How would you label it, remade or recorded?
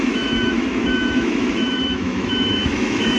remade